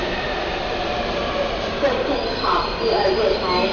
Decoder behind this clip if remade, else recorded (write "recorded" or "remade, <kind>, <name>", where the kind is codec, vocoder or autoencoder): recorded